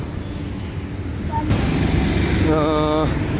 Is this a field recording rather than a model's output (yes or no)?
yes